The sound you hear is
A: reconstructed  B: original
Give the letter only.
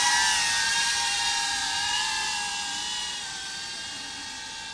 B